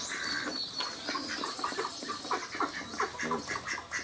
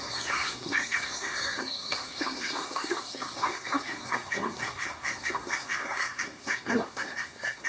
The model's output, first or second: second